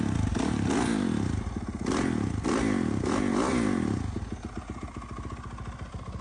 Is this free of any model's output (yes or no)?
yes